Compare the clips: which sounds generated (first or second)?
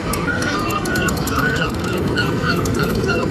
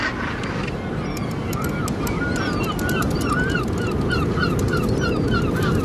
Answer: first